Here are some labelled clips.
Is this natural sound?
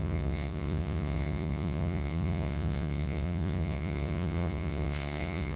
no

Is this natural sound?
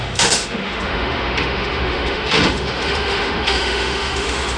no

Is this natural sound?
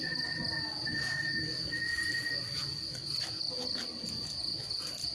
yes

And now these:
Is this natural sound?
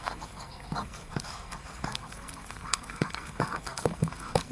no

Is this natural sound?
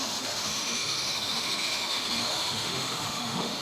no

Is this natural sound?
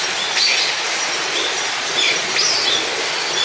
yes